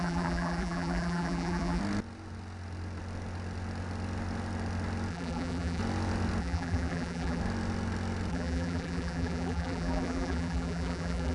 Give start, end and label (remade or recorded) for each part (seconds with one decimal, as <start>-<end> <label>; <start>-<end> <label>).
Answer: 0.0-1.8 remade; 1.8-5.1 recorded; 5.1-5.8 remade; 5.8-6.4 recorded; 6.4-7.4 remade; 7.4-8.3 recorded; 8.3-11.3 remade